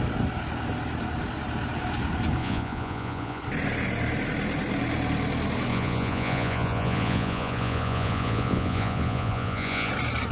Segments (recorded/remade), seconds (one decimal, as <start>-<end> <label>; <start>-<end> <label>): 0.0-2.4 recorded; 2.4-3.4 remade; 3.4-5.7 recorded; 5.7-9.9 remade; 9.9-10.3 recorded